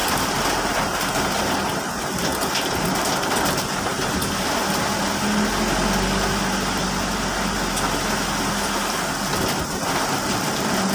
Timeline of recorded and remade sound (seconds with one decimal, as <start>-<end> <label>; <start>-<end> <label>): 0.0-1.5 remade; 1.5-2.3 recorded; 2.3-2.9 remade; 2.9-10.9 recorded